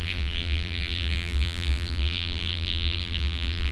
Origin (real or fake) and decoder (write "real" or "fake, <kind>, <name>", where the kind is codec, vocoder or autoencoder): fake, vocoder, BigVGAN v2